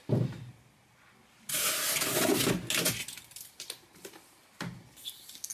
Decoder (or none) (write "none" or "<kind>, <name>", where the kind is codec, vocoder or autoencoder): none